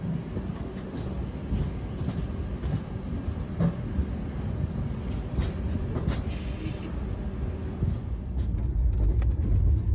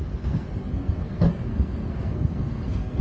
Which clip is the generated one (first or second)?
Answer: second